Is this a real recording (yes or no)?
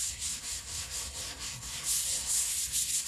no